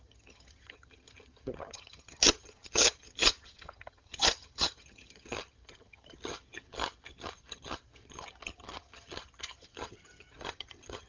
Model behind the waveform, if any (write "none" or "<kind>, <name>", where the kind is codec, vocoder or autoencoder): vocoder, HiFi-GAN